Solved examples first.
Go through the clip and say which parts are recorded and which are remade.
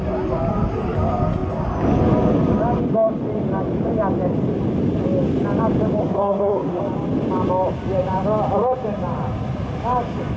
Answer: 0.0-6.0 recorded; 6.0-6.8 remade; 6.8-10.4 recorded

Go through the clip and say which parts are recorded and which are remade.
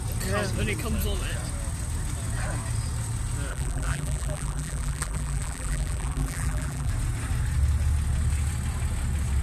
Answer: 0.0-3.5 recorded; 3.5-6.9 remade; 6.9-9.4 recorded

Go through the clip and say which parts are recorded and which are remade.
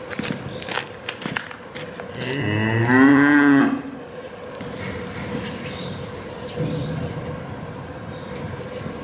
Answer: 0.0-3.1 recorded; 3.1-3.6 remade; 3.6-9.0 recorded